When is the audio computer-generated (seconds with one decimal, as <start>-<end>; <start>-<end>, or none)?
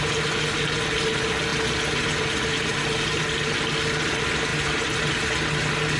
none